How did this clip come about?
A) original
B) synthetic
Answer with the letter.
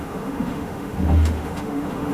B